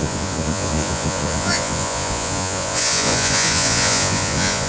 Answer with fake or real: fake